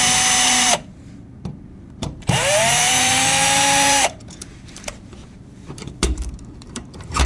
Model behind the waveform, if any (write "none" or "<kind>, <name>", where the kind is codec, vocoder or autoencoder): vocoder, BigVGAN v2